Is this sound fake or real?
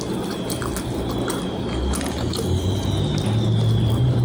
real